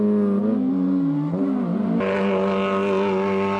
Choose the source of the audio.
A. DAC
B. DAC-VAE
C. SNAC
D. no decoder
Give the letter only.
D